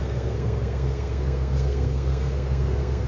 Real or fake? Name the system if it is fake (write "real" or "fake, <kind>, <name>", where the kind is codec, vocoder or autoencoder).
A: fake, codec, SNAC